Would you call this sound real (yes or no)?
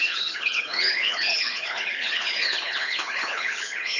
no